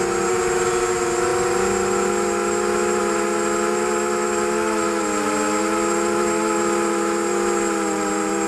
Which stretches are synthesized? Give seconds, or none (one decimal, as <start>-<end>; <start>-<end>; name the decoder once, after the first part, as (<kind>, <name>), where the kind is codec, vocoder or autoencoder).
none